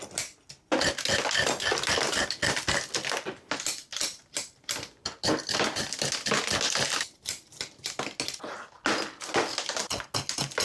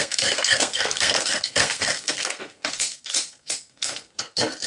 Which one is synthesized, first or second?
second